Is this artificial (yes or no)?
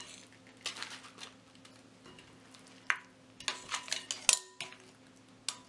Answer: no